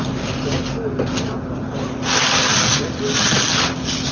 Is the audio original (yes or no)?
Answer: yes